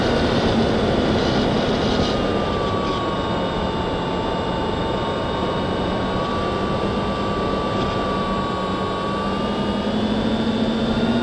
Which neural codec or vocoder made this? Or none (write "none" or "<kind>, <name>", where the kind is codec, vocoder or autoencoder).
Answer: none